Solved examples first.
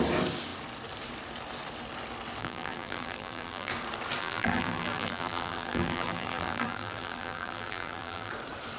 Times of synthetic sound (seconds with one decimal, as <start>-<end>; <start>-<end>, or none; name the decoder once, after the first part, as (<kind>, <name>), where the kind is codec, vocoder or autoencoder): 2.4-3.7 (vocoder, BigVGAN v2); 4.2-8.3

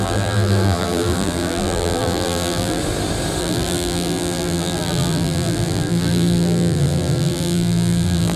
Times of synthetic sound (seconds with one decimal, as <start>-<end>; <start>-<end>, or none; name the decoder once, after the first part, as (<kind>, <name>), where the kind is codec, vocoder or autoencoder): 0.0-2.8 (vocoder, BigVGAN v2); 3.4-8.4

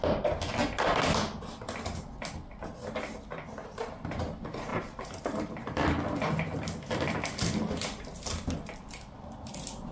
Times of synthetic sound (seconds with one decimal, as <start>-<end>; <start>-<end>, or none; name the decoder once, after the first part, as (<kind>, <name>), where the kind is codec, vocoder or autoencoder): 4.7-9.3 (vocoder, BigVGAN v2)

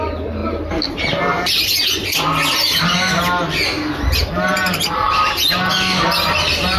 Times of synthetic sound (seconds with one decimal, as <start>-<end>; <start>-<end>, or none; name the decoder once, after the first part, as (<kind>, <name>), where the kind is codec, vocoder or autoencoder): none

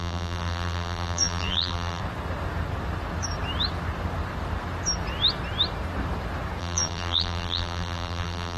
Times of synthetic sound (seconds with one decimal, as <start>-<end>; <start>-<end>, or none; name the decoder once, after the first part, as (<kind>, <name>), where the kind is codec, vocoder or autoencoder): 0.0-2.0 (vocoder, BigVGAN v2); 6.6-8.6

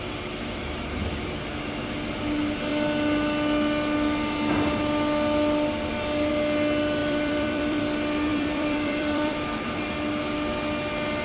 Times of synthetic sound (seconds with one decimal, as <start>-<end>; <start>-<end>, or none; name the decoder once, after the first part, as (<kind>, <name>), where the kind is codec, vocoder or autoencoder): 7.0-7.8 (vocoder, BigVGAN v2); 8.3-9.8